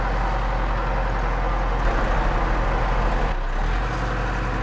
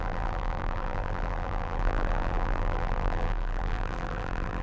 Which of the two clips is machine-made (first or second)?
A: second